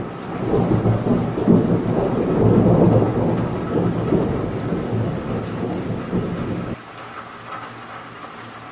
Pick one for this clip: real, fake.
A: real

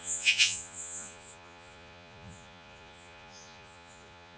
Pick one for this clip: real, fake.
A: fake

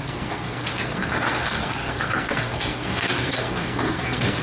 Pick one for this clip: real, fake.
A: fake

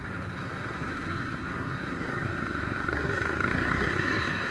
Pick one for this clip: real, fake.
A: fake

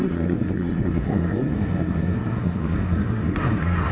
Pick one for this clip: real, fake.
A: fake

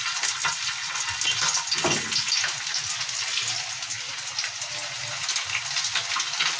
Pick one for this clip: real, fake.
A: real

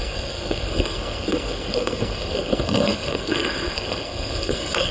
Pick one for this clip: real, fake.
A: fake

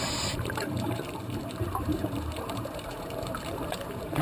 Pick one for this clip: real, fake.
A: fake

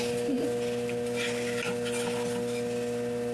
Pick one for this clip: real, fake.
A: real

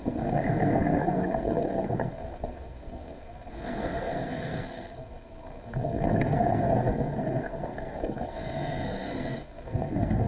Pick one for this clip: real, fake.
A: fake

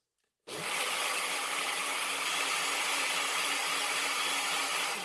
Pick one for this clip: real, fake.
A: real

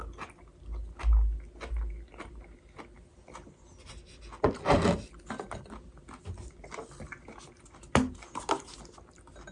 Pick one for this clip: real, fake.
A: real